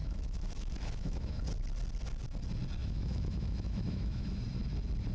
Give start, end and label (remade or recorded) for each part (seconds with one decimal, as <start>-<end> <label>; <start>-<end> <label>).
0.0-1.4 remade; 1.4-2.8 recorded; 2.8-4.4 remade; 4.4-5.1 recorded